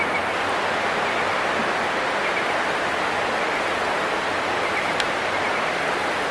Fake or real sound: real